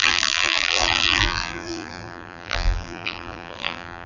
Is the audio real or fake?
fake